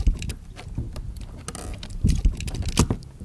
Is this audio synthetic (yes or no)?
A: no